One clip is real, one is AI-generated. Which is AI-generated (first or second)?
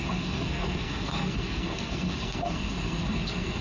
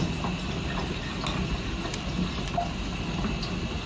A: first